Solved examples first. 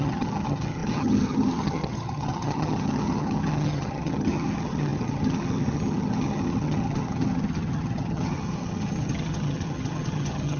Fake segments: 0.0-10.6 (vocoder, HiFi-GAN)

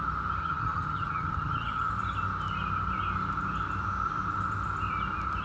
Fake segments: 0.4-1.9 (vocoder, HiFi-GAN)

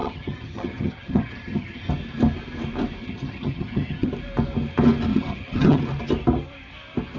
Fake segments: 0.0-1.9 (vocoder, HiFi-GAN); 3.0-4.1; 5.1-5.8

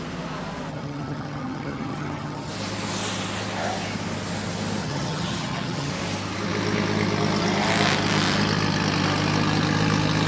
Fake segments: 0.7-2.5 (vocoder, HiFi-GAN); 4.8-5.9